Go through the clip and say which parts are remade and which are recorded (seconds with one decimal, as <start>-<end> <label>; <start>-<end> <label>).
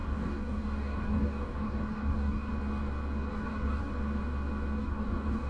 0.0-2.5 remade; 2.5-3.3 recorded; 3.3-3.9 remade; 3.9-4.8 recorded; 4.8-5.5 remade